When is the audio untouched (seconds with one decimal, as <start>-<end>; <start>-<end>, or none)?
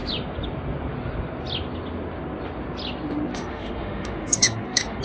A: 0.0-3.3